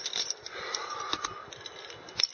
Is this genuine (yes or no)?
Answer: yes